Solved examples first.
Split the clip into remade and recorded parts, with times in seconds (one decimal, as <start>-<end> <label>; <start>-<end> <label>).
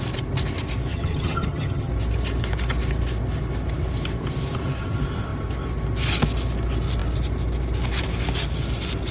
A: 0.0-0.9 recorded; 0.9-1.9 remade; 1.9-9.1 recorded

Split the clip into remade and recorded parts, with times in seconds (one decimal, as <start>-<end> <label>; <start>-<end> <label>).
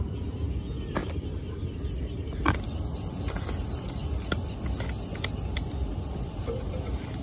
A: 0.0-7.2 recorded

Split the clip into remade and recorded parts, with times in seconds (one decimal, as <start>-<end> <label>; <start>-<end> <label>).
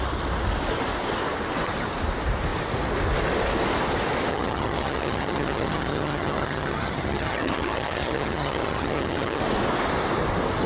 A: 0.0-4.3 recorded; 4.3-9.4 remade; 9.4-10.7 recorded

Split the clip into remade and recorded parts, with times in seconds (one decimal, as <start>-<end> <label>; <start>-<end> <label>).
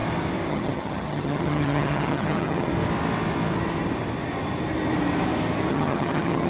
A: 0.0-0.5 recorded; 0.5-2.7 remade; 2.7-5.7 recorded; 5.7-6.5 remade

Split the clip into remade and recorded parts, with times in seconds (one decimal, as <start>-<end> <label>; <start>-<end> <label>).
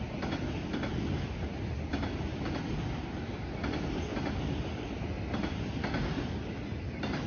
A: 0.0-7.3 recorded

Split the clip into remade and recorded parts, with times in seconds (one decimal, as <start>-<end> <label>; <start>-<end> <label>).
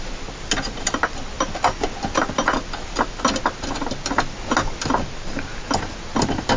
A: 0.0-6.6 recorded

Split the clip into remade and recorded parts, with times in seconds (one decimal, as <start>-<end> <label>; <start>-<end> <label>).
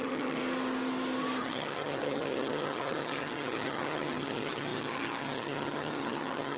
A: 0.0-0.4 remade; 0.4-1.4 recorded; 1.4-6.6 remade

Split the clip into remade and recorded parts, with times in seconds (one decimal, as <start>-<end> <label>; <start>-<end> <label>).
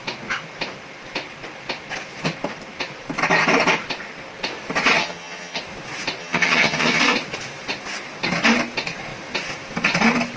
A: 0.0-5.0 recorded; 5.0-5.6 remade; 5.6-6.2 recorded; 6.2-7.0 remade; 7.0-10.4 recorded